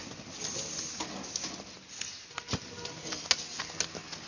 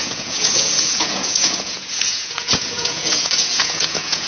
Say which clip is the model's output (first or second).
second